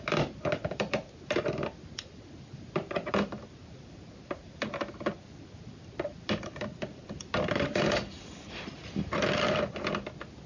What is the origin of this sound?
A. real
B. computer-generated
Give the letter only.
A